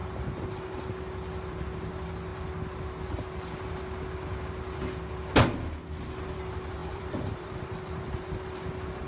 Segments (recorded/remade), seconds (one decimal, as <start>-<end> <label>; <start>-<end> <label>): 0.0-6.8 recorded; 6.8-8.3 remade; 8.3-9.1 recorded